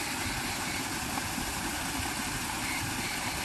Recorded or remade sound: recorded